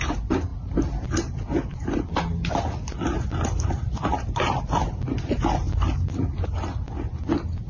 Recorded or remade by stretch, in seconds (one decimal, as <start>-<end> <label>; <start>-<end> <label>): 0.0-7.7 recorded